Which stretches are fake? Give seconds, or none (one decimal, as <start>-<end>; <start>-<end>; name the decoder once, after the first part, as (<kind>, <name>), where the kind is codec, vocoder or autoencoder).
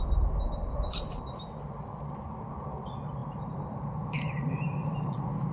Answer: 0.6-1.6 (vocoder, BigVGAN v2); 3.2-5.1